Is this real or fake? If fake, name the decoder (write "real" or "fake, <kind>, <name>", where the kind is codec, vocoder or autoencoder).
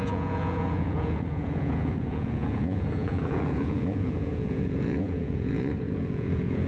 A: fake, vocoder, Vocos